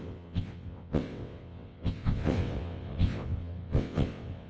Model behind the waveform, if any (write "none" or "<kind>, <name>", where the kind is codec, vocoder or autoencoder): vocoder, WaveNeXt